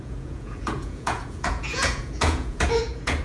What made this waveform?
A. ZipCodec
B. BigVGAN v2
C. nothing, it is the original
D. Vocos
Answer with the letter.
D